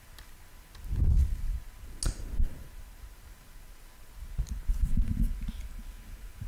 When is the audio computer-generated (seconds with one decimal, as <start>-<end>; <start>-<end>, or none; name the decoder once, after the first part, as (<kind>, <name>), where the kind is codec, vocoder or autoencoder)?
none